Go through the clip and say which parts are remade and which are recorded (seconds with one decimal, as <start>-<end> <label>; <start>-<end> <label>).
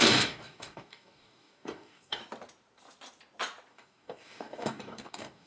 0.0-2.2 remade; 2.2-3.7 recorded; 3.7-5.5 remade